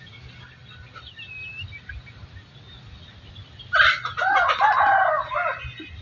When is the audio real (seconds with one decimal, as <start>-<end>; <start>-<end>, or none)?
0.0-6.0

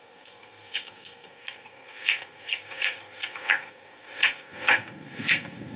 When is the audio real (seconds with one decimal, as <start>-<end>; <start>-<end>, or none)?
none

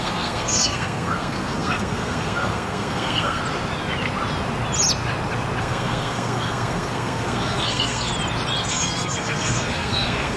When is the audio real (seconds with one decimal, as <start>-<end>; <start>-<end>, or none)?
3.4-5.6; 8.1-8.7

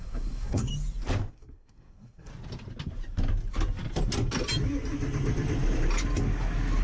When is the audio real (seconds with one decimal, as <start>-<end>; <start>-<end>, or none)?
0.7-1.3; 2.3-6.8

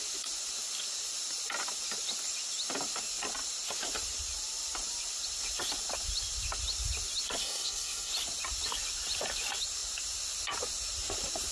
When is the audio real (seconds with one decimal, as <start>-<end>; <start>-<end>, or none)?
0.0-7.4; 8.1-11.5

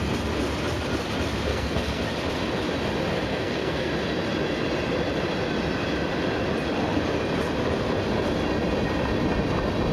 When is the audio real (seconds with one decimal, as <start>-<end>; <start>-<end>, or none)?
0.0-1.5; 2.0-3.3; 3.9-9.9

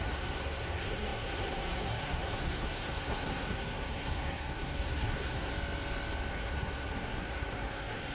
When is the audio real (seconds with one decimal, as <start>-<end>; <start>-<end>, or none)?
5.5-6.3